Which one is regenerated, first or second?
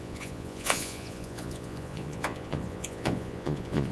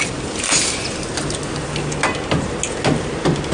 first